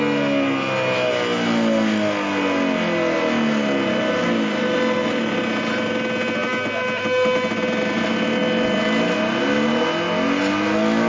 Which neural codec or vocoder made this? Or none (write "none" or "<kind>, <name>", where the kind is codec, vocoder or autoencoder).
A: none